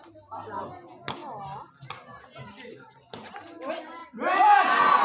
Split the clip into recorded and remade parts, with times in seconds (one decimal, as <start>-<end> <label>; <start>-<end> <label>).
0.0-5.0 recorded